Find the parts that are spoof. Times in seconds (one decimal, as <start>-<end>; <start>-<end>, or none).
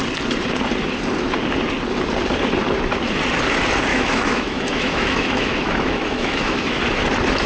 3.9-6.8